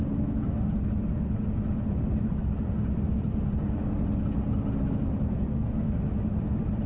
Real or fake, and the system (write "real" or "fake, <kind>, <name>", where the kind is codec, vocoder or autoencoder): real